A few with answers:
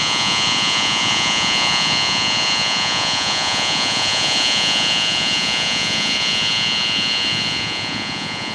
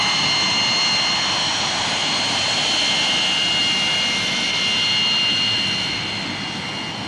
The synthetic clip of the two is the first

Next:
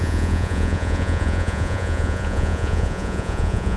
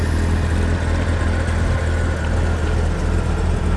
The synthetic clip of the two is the first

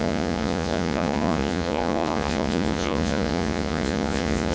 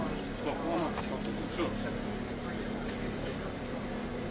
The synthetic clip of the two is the first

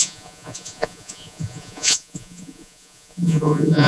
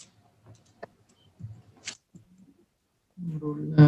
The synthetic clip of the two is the first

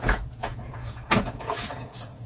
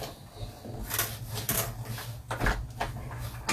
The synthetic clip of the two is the first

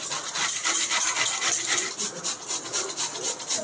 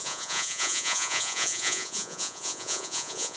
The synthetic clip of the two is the second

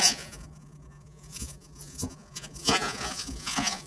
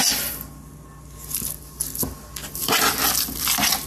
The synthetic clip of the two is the first